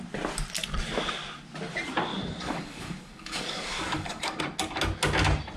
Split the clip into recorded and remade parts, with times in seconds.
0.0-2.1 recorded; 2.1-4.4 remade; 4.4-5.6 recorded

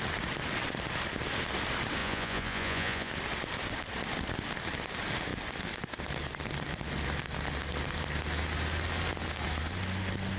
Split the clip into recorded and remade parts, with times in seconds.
0.0-2.0 recorded; 2.0-3.1 remade; 3.1-10.4 recorded

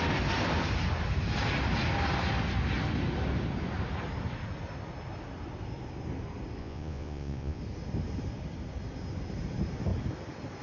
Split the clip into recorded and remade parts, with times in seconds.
0.0-6.6 recorded; 6.6-7.6 remade; 7.6-10.6 recorded